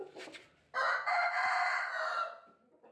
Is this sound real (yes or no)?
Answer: yes